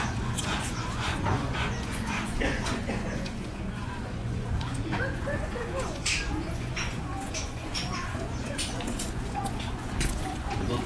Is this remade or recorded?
remade